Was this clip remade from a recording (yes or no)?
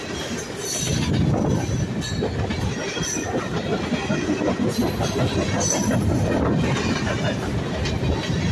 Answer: no